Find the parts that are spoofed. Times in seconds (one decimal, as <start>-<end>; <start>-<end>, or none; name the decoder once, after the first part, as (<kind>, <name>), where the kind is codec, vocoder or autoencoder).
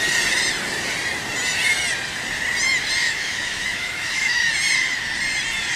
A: 3.0-4.4 (autoencoder, DAC-VAE)